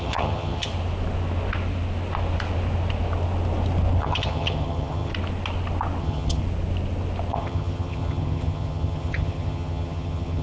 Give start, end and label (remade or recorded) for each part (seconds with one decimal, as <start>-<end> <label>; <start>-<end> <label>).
0.0-0.7 remade; 0.7-4.0 recorded; 4.0-5.1 remade; 5.1-6.0 recorded; 6.0-6.4 remade; 6.4-7.3 recorded; 7.3-10.4 remade